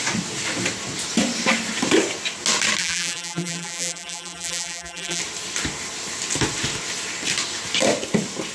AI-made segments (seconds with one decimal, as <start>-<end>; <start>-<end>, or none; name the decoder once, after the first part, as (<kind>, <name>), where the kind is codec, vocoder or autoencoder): 2.8-5.2 (vocoder, BigVGAN v2)